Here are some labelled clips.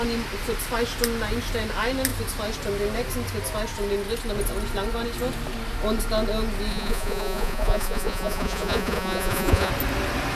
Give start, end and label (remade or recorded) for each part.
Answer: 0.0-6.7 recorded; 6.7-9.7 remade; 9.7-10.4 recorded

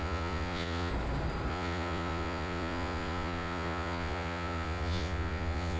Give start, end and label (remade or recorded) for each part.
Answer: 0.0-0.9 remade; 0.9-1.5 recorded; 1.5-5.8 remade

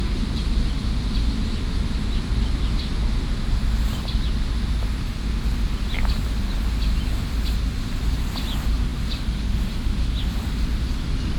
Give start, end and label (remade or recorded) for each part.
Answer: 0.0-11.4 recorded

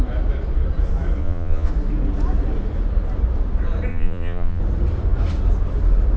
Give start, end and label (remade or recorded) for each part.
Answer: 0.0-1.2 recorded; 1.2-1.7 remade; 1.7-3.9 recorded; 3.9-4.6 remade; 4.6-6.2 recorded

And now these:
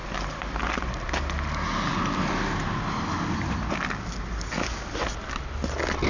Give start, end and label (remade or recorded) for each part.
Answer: 0.0-6.1 recorded

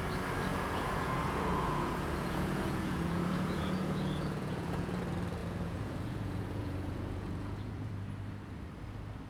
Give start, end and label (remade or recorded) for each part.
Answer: 0.0-0.5 recorded; 0.5-5.0 remade; 5.0-5.4 recorded; 5.4-7.9 remade; 7.9-9.3 recorded

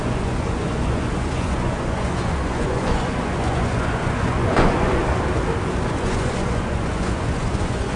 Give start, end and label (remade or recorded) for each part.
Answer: 0.0-5.0 remade; 5.0-5.9 recorded; 5.9-8.0 remade